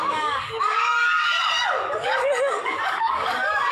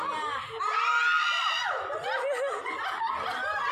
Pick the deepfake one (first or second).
first